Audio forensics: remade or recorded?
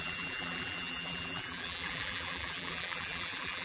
remade